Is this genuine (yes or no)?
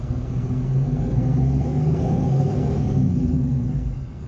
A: no